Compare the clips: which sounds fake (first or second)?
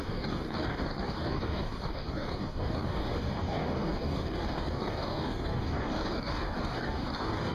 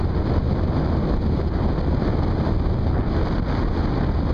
first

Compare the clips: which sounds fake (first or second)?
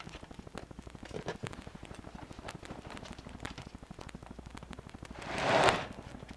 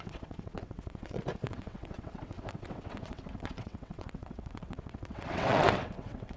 second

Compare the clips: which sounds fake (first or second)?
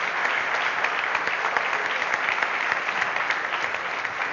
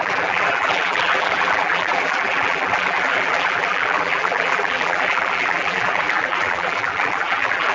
second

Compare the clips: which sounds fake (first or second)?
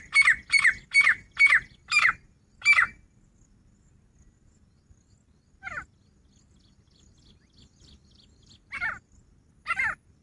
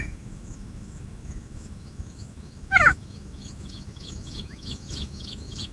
second